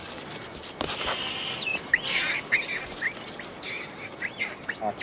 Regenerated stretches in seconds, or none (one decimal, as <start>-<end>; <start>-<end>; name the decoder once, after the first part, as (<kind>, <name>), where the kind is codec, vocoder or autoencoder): none